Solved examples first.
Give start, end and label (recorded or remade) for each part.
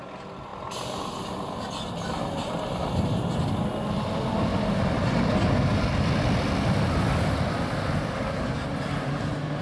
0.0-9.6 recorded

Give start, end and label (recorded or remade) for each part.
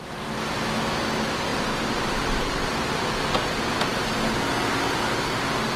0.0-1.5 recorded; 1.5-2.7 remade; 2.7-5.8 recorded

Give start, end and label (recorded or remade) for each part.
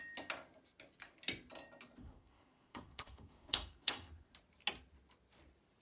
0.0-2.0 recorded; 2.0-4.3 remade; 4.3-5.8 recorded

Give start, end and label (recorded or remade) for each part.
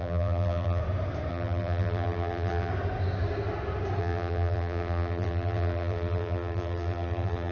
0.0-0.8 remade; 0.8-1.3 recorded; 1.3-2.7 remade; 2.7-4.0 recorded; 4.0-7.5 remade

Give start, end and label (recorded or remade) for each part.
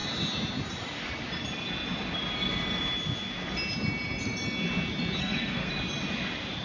0.0-5.2 recorded; 5.2-5.7 remade; 5.7-6.6 recorded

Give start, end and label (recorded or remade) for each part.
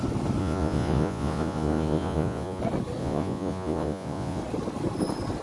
0.0-0.4 recorded; 0.4-2.6 remade; 2.6-3.0 recorded; 3.0-4.4 remade; 4.4-5.4 recorded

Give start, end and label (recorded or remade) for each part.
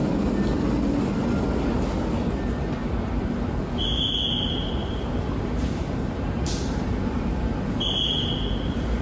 0.0-2.8 recorded; 2.8-3.5 remade; 3.5-4.8 recorded; 4.8-7.5 remade; 7.5-9.0 recorded